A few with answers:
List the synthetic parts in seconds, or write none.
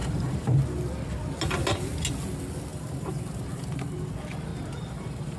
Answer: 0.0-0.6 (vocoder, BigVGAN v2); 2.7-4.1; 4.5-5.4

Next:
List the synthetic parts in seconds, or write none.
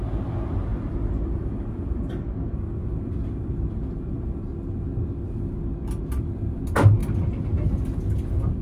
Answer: 0.7-4.4 (vocoder, BigVGAN v2)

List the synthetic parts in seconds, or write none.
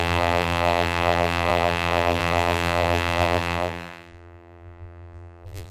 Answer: 0.0-5.7 (vocoder, BigVGAN v2)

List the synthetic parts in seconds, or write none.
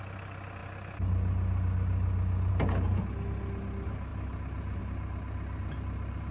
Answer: none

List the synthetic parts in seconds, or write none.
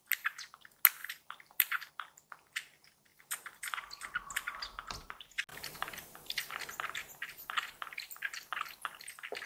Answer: 1.0-1.9 (vocoder, BigVGAN v2); 3.1-3.6; 5.5-6.5; 7.0-9.0